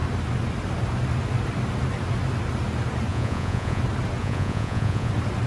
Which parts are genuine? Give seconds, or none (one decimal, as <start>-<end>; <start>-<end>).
0.0-3.1; 3.8-4.2; 5.1-5.5